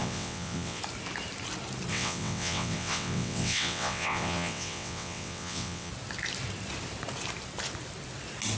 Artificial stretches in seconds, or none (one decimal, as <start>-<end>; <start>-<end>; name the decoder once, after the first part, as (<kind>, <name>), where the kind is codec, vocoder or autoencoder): 0.0-0.8 (vocoder, WaveNeXt); 1.9-5.9